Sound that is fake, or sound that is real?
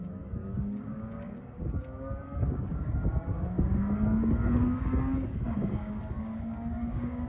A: fake